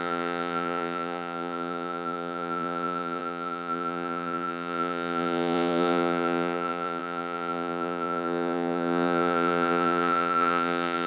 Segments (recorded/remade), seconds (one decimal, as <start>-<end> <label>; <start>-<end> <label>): 0.0-11.1 remade